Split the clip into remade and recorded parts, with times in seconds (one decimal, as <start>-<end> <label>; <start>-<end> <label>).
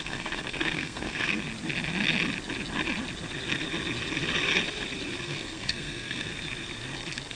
0.0-1.5 remade; 1.5-5.2 recorded; 5.2-6.3 remade; 6.3-7.3 recorded